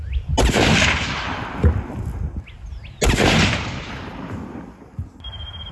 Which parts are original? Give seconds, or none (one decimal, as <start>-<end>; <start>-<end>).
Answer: 0.0-5.7